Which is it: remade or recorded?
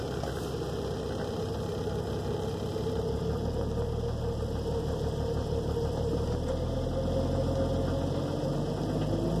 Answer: recorded